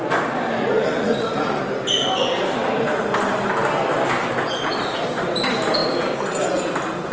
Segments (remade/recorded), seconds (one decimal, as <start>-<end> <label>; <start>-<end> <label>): 0.0-0.6 recorded; 0.6-1.6 remade; 1.6-7.1 recorded